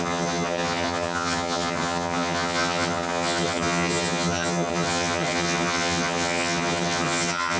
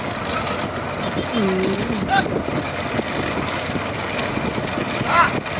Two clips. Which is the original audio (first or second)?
second